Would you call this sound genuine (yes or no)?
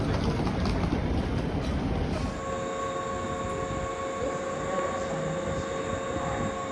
yes